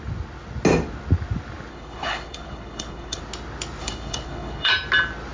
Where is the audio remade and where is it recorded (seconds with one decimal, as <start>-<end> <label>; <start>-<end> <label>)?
0.0-1.7 recorded; 1.7-3.2 remade; 3.2-3.8 recorded; 3.8-4.7 remade; 4.7-5.3 recorded